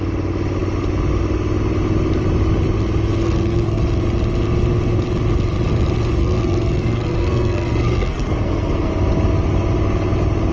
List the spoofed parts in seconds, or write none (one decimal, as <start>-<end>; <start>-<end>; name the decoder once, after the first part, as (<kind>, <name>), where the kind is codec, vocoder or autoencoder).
3.2-3.8 (codec, SNAC); 6.2-8.9